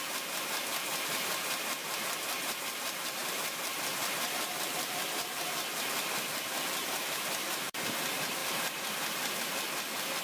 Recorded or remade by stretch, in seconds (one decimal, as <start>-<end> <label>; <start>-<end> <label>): 0.0-1.8 remade; 1.8-2.6 recorded; 2.6-10.2 remade